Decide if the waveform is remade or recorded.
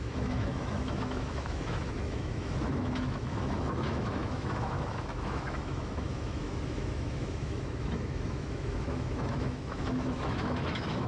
remade